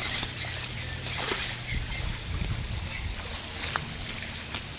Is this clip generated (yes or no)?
no